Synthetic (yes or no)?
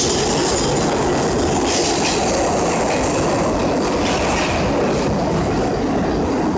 no